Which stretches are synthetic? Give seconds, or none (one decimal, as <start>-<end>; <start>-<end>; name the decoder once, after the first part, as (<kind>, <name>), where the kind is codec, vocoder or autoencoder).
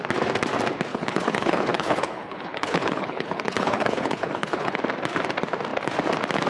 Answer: 0.9-4.8 (codec, HILCodec)